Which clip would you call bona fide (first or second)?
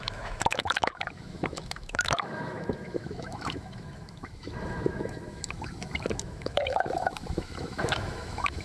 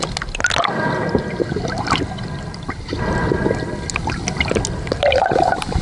second